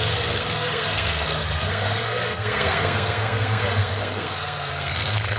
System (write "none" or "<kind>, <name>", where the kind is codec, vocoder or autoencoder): codec, SNAC